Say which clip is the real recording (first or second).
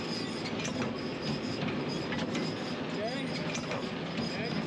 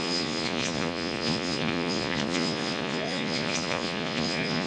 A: first